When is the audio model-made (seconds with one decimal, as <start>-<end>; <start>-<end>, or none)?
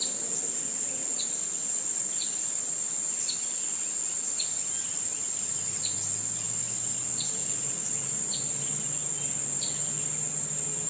none